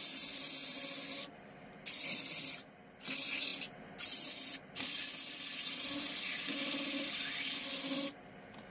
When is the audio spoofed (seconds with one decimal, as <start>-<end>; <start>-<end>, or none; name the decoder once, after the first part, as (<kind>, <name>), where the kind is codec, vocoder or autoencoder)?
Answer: none